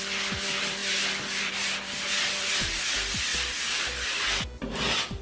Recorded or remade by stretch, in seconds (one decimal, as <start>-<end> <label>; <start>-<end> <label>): 0.0-5.2 recorded